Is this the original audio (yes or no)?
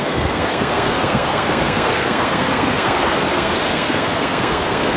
no